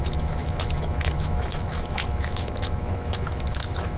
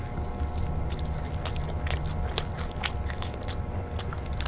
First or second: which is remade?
first